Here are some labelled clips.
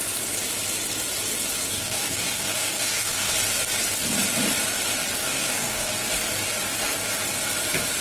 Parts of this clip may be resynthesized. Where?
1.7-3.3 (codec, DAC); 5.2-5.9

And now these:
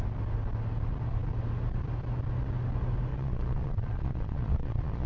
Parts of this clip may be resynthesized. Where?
3.1-5.1 (vocoder, Vocos)